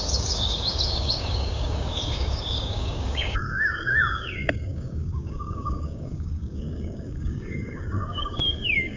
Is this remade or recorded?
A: remade